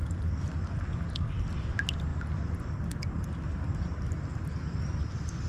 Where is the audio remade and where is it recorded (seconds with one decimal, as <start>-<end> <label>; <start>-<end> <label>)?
0.0-5.5 recorded